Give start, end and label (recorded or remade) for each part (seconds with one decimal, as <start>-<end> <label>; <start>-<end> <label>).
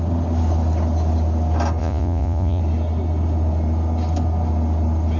0.0-1.8 recorded; 1.8-2.6 remade; 2.6-5.2 recorded